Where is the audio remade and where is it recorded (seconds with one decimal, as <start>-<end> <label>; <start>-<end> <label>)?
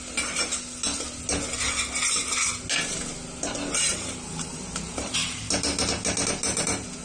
0.0-3.9 recorded; 3.9-5.4 remade; 5.4-7.0 recorded